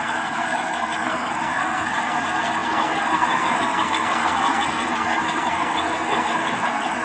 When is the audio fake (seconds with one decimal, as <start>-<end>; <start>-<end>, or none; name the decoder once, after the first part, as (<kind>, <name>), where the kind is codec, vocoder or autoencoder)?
0.0-7.0 (codec, SNAC)